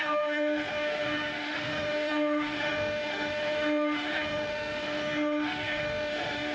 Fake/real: fake